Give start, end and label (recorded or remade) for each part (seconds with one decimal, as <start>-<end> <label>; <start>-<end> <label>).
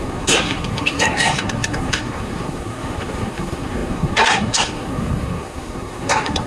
0.0-6.5 remade